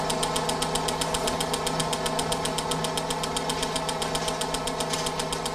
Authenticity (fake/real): real